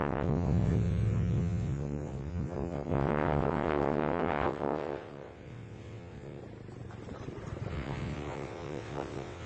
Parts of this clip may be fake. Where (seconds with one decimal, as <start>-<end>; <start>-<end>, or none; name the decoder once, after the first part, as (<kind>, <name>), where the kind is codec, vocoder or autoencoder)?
0.0-6.4 (vocoder, WaveNeXt); 7.7-9.5